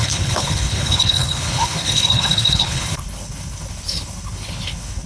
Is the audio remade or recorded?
remade